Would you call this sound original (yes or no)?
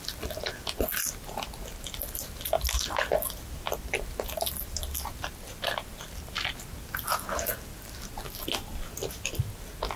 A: yes